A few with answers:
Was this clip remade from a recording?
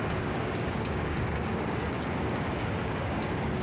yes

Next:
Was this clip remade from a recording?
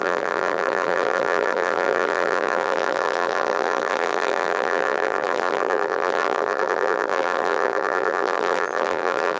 yes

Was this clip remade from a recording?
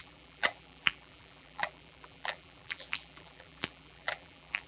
yes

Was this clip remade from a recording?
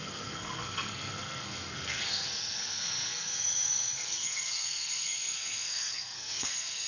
yes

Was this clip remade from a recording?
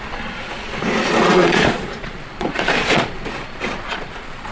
yes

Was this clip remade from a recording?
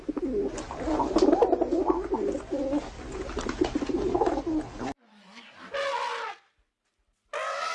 no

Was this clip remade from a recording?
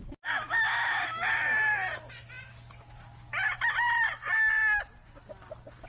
no